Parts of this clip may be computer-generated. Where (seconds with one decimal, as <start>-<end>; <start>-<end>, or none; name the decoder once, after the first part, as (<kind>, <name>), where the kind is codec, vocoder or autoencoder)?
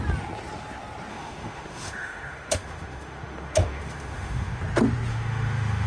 1.1-4.6 (autoencoder, DAC-VAE); 5.1-5.9